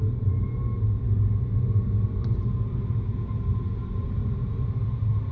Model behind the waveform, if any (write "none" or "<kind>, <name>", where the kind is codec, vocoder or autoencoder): none